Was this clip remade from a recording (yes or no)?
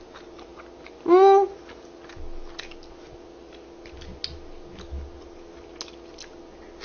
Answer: no